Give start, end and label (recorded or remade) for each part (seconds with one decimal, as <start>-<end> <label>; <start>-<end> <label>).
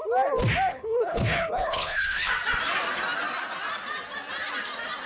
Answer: 0.0-0.7 recorded; 0.7-2.3 remade; 2.3-5.1 recorded